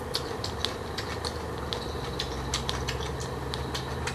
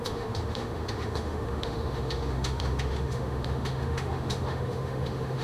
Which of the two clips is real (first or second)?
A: first